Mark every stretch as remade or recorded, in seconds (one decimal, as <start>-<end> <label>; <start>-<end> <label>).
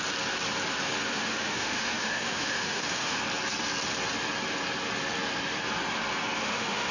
0.0-1.1 recorded; 1.1-3.2 remade; 3.2-6.4 recorded; 6.4-6.9 remade